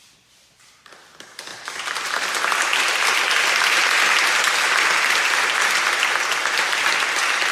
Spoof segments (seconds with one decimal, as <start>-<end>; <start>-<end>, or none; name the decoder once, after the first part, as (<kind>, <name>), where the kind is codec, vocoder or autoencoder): none

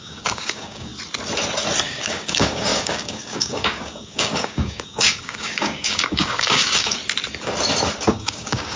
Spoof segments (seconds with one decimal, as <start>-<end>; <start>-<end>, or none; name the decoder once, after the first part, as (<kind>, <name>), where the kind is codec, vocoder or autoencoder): 0.0-0.9 (codec, DAC); 1.8-7.0; 8.1-8.8